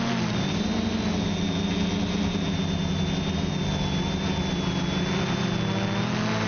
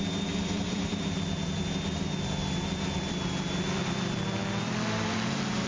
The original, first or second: first